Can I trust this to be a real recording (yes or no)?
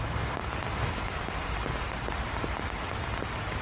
yes